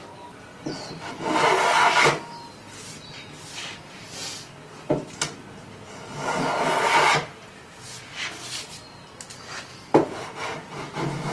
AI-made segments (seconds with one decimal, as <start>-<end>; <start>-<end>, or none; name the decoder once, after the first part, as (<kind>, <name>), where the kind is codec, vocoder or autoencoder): none